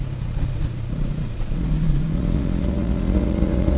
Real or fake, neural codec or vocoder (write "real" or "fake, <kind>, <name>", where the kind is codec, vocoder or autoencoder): fake, vocoder, Vocos